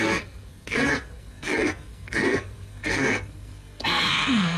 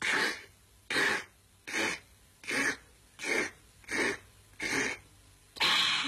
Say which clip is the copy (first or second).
first